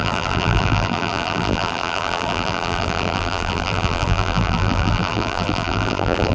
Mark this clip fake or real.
fake